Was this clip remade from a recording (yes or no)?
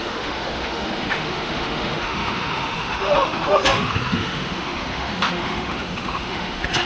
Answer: yes